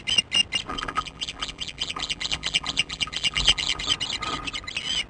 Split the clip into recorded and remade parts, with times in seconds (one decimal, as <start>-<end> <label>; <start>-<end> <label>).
0.0-0.7 recorded; 0.7-3.8 remade; 3.8-5.1 recorded